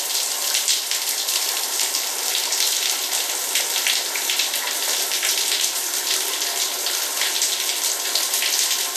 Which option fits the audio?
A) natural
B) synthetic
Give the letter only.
B